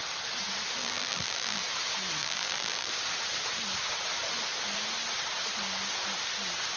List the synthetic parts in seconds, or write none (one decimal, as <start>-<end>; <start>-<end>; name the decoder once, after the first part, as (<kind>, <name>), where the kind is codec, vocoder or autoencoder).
0.8-1.6 (vocoder, BigVGAN v2); 2.2-2.9